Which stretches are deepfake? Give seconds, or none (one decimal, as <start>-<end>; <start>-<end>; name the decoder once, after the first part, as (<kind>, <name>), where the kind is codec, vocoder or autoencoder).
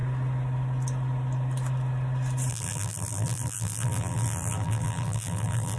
2.5-5.8 (vocoder, BigVGAN v2)